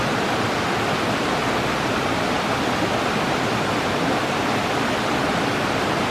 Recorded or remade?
remade